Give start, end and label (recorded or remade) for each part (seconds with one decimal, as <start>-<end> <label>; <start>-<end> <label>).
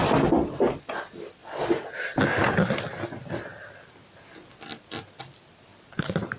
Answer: 0.0-6.4 recorded